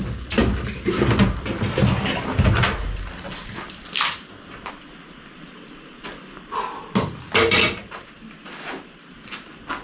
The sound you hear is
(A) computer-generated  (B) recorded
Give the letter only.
B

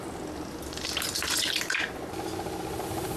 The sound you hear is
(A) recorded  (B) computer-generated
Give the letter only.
A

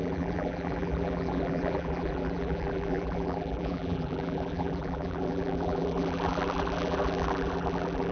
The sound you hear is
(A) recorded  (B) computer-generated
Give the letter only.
B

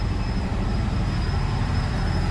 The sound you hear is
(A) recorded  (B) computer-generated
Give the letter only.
B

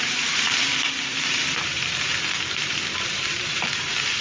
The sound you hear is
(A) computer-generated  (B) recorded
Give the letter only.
A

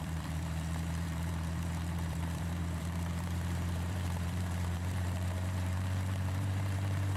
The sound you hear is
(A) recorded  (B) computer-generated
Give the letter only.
B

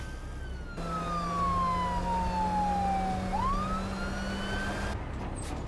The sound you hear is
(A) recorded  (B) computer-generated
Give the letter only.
A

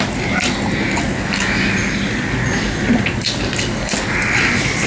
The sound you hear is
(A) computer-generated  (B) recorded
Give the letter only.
B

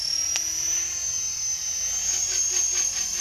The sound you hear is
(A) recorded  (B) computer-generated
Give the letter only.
A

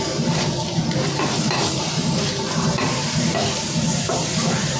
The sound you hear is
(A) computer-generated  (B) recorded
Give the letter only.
A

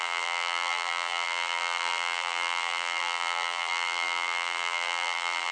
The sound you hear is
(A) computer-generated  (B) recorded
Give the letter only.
A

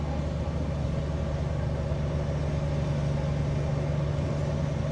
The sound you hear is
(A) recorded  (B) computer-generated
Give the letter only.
A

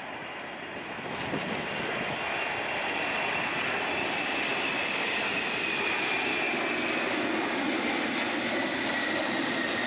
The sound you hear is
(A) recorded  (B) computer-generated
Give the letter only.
B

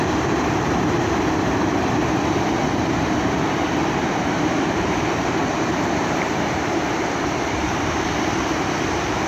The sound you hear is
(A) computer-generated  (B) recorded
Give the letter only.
A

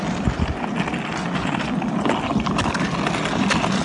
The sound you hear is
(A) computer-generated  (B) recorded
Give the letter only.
B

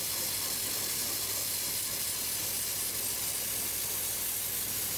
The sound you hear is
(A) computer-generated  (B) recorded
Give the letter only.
B